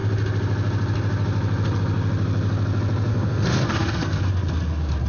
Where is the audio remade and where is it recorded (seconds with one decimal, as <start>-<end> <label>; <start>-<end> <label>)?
0.0-3.1 recorded; 3.1-4.2 remade; 4.2-5.1 recorded

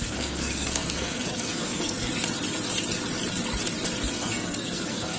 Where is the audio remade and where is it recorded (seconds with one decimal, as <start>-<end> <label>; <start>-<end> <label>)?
0.0-2.1 remade; 2.1-4.1 recorded; 4.1-5.2 remade

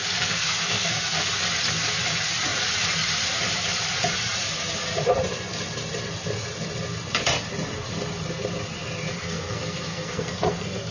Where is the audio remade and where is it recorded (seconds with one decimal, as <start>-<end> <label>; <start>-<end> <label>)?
0.0-1.3 remade; 1.3-9.1 recorded; 9.1-10.9 remade

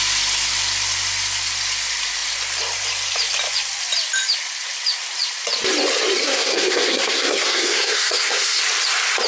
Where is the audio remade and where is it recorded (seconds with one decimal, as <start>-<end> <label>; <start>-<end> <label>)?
0.0-6.2 recorded; 6.2-8.6 remade; 8.6-9.3 recorded

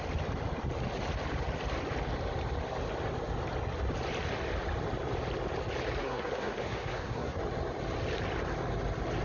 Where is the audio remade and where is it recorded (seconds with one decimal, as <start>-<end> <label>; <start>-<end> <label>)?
0.0-6.0 recorded; 6.0-7.4 remade; 7.4-9.2 recorded

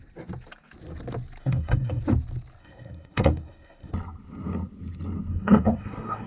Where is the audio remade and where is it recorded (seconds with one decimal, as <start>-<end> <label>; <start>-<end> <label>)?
0.0-1.4 recorded; 1.4-2.0 remade; 2.0-2.6 recorded; 2.6-3.9 remade; 3.9-5.3 recorded; 5.3-6.3 remade